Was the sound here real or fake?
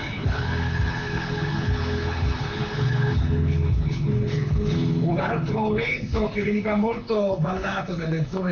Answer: fake